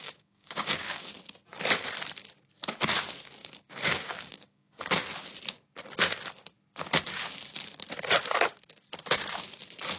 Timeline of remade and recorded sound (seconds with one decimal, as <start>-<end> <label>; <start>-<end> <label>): 0.0-1.1 remade; 1.1-3.4 recorded; 3.4-4.9 remade; 4.9-10.0 recorded

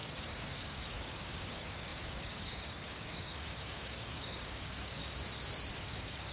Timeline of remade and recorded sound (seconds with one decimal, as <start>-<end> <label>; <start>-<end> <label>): 0.0-5.0 remade; 5.0-5.7 recorded; 5.7-6.3 remade

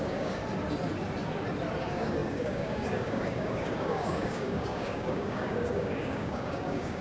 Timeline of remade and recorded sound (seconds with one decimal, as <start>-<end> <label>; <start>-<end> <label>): 0.0-0.4 remade; 0.4-1.8 recorded; 1.8-7.0 remade

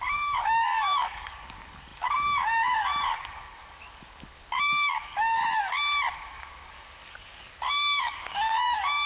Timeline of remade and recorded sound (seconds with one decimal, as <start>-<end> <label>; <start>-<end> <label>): 0.0-5.4 remade; 5.4-6.1 recorded; 6.1-9.1 remade